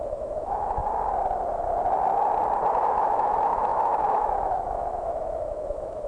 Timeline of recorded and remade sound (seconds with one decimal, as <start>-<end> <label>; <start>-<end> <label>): 0.0-0.8 remade; 0.8-2.7 recorded; 2.7-6.1 remade